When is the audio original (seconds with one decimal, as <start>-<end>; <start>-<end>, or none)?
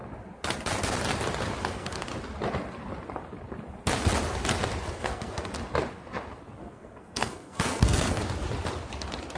0.0-1.6; 2.1-4.9; 5.5-6.6; 8.2-9.4